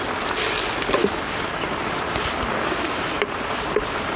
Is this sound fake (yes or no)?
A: no